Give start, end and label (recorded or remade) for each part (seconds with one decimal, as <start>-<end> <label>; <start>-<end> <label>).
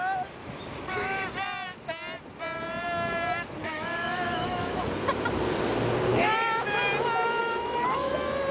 0.0-0.4 recorded; 0.4-1.2 remade; 1.2-3.6 recorded; 3.6-4.9 remade; 4.9-6.1 recorded; 6.1-6.6 remade; 6.6-7.4 recorded; 7.4-8.1 remade; 8.1-8.5 recorded